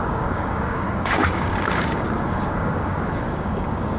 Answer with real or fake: fake